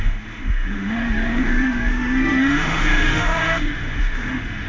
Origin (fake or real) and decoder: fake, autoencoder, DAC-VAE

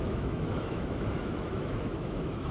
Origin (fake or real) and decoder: fake, autoencoder, DAC-VAE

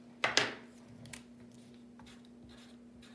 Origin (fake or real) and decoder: real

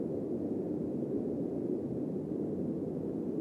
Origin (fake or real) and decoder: real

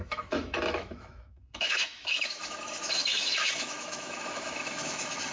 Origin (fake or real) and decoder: fake, autoencoder, DAC-VAE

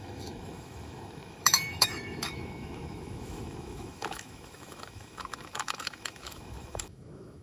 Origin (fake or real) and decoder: fake, autoencoder, DAC-VAE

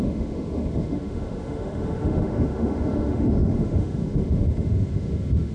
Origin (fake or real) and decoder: fake, autoencoder, DAC-VAE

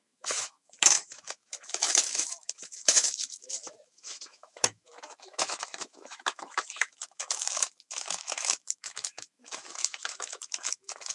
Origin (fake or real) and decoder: fake, autoencoder, DAC-VAE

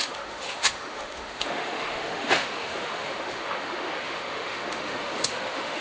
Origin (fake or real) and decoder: fake, autoencoder, DAC-VAE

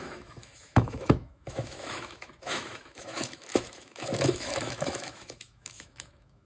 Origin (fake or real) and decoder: fake, autoencoder, DAC-VAE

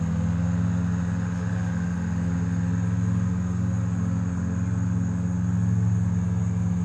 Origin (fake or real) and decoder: real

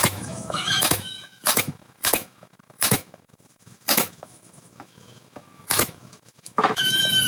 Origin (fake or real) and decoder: fake, autoencoder, DAC-VAE